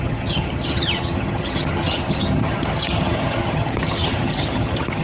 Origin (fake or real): fake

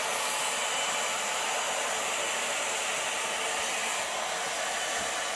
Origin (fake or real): real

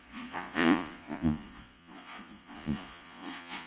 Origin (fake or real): fake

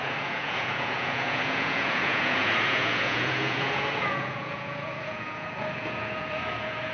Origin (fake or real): fake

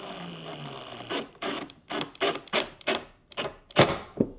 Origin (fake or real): real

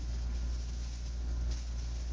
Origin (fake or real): real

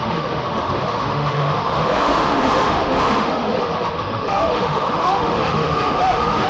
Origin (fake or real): fake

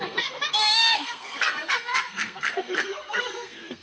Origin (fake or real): fake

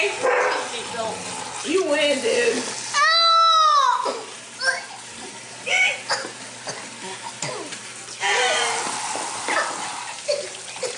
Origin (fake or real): real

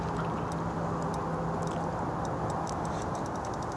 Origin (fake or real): real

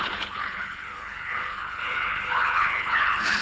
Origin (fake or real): fake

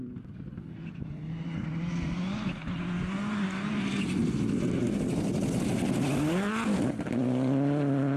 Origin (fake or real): real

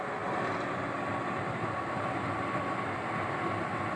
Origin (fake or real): real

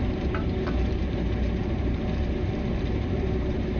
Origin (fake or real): fake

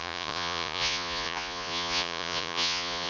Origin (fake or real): fake